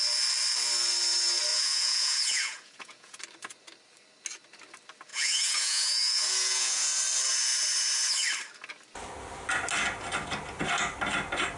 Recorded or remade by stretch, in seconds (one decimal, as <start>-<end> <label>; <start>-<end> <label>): 0.0-1.5 recorded; 1.5-3.2 remade; 3.2-5.1 recorded; 5.1-7.0 remade; 7.0-11.6 recorded